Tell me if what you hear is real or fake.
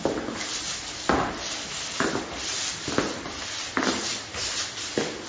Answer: real